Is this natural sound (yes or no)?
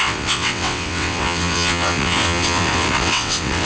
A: no